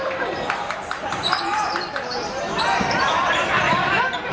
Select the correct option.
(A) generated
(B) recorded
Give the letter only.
A